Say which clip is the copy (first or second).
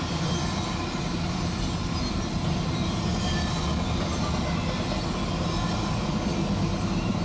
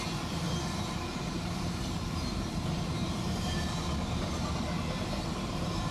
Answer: second